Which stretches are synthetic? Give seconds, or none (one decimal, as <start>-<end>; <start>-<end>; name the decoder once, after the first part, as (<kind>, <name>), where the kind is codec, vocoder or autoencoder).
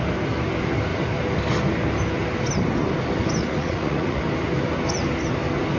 3.4-4.2 (vocoder, Vocos)